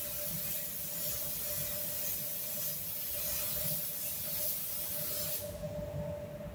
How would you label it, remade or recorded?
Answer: recorded